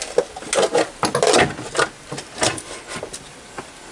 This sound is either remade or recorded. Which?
recorded